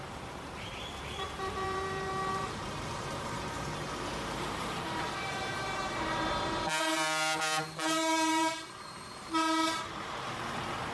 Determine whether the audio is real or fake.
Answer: fake